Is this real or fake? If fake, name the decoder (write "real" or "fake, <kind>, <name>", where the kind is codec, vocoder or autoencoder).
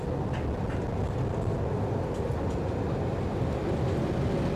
real